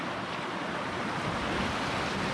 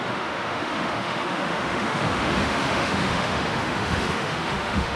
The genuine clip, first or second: first